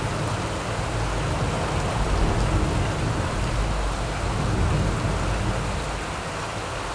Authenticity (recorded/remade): recorded